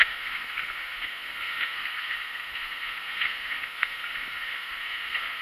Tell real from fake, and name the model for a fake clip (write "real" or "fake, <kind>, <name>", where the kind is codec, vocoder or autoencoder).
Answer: fake, codec, SNAC